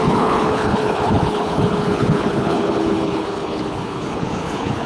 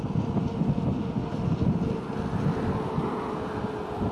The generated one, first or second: first